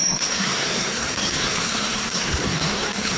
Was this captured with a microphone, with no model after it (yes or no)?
no